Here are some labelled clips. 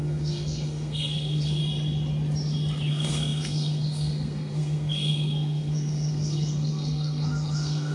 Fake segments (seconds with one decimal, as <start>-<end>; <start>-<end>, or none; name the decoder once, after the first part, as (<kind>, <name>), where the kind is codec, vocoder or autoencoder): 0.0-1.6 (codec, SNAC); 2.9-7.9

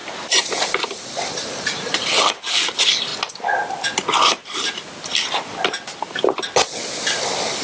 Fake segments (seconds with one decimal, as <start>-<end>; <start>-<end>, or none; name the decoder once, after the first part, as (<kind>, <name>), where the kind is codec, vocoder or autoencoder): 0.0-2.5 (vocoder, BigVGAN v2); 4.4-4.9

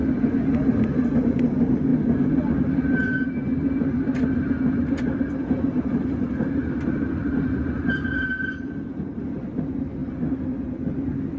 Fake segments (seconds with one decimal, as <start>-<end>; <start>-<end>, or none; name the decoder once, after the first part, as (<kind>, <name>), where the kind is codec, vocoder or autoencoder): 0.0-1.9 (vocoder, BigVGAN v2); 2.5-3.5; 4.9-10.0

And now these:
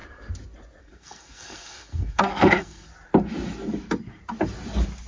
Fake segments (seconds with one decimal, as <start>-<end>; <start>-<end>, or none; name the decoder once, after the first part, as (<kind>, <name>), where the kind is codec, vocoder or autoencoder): 0.8-2.9 (codec, SNAC)